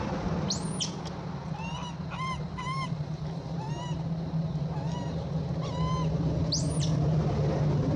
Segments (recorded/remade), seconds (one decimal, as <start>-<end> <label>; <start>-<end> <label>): 0.0-8.0 recorded